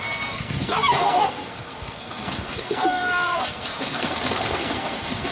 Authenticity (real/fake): fake